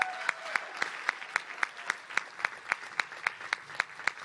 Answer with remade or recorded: recorded